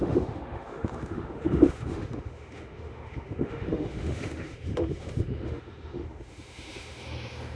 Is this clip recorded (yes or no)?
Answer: no